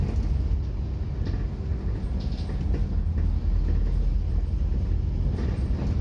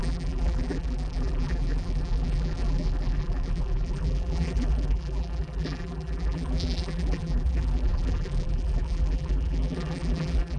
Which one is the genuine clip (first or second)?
first